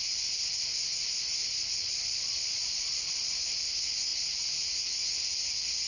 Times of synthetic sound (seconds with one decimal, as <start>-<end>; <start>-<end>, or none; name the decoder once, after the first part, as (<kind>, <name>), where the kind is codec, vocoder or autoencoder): 1.4-3.3 (vocoder, Vocos)